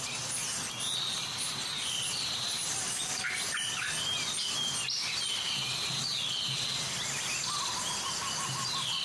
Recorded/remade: recorded